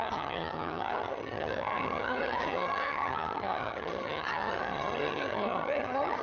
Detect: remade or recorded remade